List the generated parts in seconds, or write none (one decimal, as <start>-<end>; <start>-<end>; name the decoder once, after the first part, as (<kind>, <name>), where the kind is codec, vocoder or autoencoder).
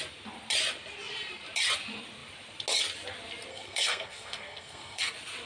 3.5-5.0 (codec, SNAC)